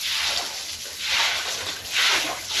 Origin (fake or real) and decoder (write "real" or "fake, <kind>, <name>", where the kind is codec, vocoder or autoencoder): real